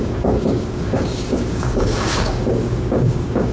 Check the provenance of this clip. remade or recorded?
remade